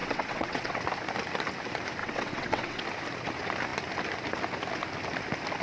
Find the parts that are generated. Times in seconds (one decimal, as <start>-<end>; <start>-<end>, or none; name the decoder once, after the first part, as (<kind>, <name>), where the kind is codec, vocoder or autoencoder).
0.0-0.8 (vocoder, WaveNeXt); 2.0-2.8

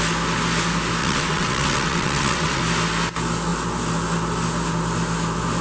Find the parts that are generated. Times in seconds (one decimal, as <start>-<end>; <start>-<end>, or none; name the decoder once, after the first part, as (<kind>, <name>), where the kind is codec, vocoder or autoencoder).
1.0-2.6 (vocoder, WaveNeXt)

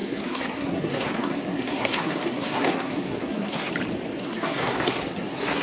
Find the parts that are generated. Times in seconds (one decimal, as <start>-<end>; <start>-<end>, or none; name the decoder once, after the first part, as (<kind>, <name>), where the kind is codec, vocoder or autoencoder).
0.0-3.7 (codec, SNAC); 4.2-5.6

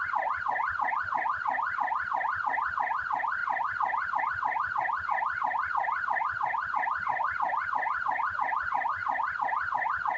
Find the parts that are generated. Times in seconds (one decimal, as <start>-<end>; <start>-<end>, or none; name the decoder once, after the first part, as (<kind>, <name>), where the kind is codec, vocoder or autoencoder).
0.0-10.2 (vocoder, BigVGAN v2)

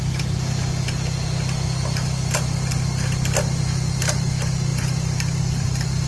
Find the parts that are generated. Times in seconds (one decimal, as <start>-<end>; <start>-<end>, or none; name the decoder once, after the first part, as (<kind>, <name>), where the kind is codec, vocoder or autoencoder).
4.7-5.4 (vocoder, BigVGAN v2)

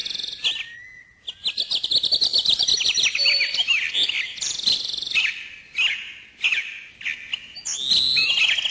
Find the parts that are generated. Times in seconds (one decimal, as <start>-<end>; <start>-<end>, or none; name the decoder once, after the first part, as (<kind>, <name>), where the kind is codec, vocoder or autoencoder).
2.3-5.3 (vocoder, BigVGAN v2)

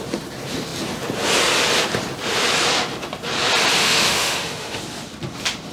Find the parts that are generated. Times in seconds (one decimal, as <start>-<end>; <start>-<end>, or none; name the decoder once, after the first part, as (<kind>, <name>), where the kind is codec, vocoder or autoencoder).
3.8-4.8 (autoencoder, DAC-VAE)